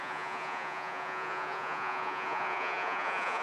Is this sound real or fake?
fake